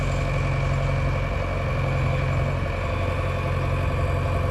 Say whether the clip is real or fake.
real